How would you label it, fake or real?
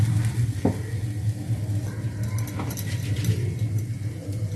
real